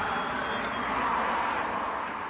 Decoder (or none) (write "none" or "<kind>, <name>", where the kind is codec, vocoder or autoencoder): none